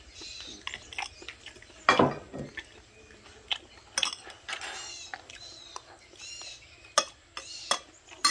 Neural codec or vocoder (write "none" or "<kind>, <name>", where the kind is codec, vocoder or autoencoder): none